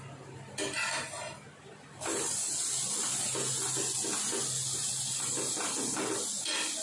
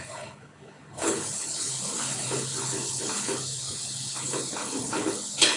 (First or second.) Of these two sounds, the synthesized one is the second